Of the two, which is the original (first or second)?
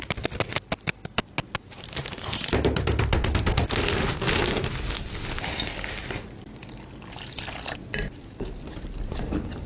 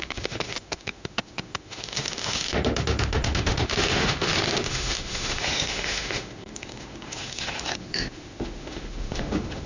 first